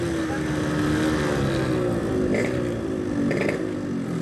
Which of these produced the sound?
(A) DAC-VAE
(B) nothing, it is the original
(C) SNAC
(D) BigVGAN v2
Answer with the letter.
B